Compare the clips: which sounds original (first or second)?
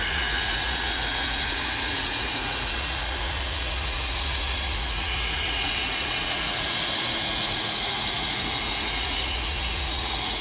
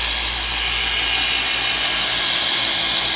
second